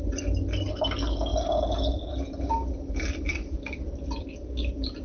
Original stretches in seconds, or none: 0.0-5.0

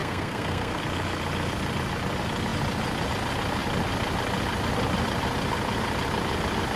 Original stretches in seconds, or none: 0.8-6.8

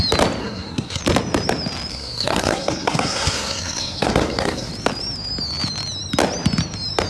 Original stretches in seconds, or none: 0.0-0.4; 1.0-1.9; 4.7-7.1

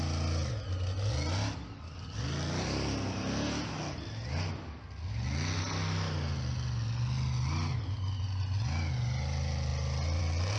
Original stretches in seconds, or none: 0.0-10.6

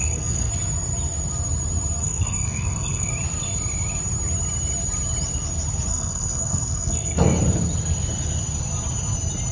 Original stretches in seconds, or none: 0.5-2.0; 3.1-5.9; 7.4-9.5

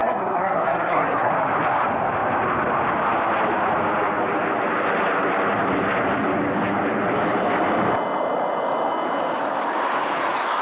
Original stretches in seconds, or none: 1.3-10.6

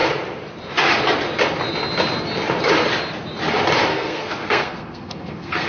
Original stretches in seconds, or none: 0.0-3.9